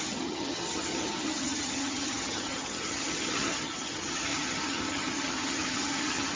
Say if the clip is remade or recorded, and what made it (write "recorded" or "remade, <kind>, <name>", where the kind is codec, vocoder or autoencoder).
remade, vocoder, HiFi-GAN